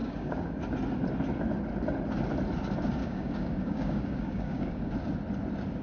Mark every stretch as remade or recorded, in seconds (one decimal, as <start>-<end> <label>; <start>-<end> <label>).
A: 0.0-0.6 remade; 0.6-3.0 recorded; 3.0-4.9 remade; 4.9-5.8 recorded